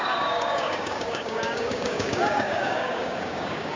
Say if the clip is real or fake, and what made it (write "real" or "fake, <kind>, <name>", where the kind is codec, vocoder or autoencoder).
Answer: fake, codec, DAC